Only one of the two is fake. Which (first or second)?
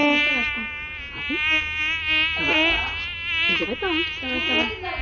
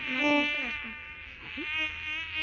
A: second